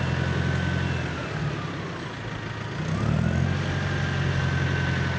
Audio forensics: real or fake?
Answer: real